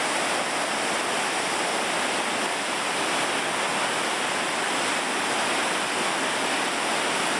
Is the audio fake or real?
real